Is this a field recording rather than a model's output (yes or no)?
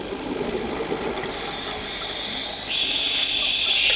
yes